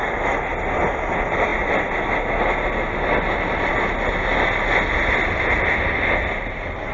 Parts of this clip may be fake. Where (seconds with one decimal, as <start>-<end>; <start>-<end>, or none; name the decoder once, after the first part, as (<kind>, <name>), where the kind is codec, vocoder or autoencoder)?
none